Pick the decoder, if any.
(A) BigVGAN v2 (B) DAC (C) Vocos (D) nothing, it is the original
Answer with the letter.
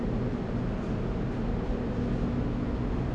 D